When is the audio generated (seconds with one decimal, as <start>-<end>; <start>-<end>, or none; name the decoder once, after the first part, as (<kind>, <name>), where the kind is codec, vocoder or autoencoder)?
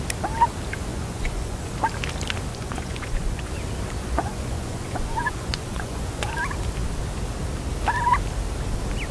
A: 0.9-1.7 (vocoder, Vocos); 2.5-3.5; 4.0-6.3